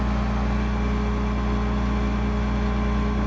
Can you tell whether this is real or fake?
real